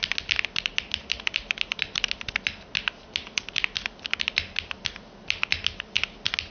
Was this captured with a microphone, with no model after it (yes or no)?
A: yes